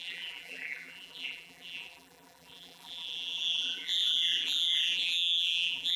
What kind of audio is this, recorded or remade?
remade